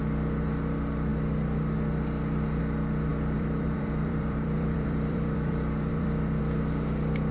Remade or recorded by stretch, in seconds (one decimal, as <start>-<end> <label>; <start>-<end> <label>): 0.0-3.1 recorded; 3.1-6.4 remade; 6.4-7.3 recorded